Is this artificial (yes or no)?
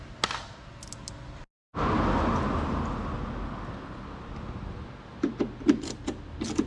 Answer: no